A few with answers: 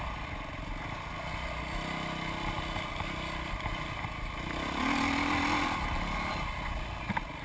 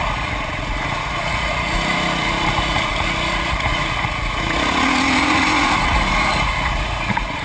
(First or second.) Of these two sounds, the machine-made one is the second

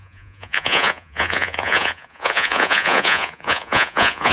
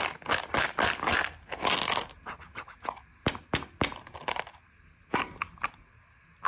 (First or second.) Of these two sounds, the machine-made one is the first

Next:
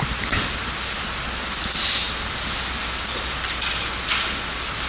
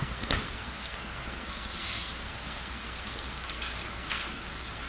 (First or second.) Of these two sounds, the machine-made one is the second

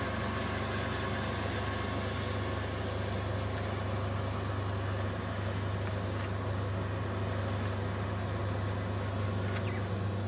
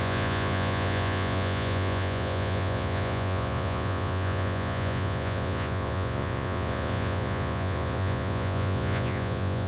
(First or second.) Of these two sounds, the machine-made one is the second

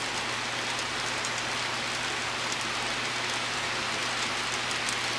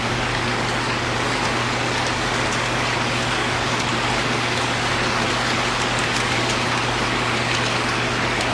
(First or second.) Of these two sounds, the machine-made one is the second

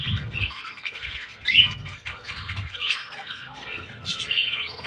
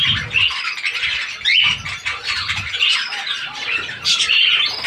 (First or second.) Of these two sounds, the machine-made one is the first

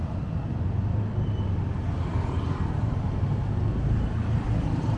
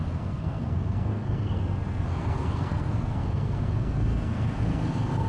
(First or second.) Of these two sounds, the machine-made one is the second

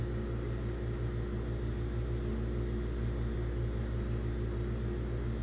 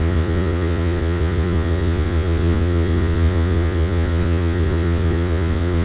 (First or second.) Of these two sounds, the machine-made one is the second